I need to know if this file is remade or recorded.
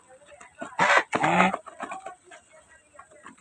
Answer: recorded